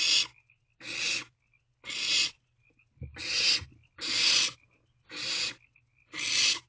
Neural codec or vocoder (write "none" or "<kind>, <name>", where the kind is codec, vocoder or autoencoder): none